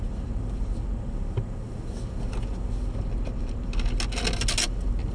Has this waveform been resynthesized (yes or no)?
no